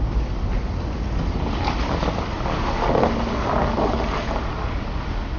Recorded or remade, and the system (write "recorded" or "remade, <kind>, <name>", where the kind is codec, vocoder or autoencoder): recorded